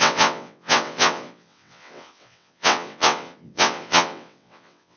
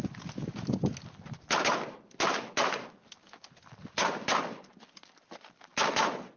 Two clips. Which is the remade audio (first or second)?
first